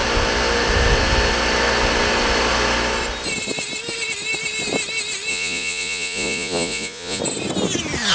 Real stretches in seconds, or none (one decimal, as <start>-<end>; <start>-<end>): 0.0-5.3; 7.2-8.1